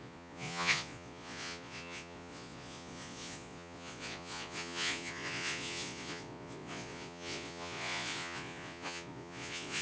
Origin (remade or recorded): remade